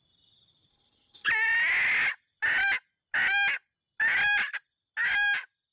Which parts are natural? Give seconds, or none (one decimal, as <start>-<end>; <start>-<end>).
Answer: 0.0-0.7; 1.3-5.7